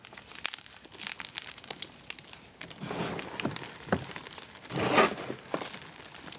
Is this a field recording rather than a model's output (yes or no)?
yes